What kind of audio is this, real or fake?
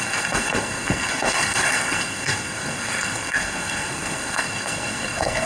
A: fake